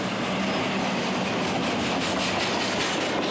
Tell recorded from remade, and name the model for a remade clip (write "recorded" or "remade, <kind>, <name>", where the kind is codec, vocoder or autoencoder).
recorded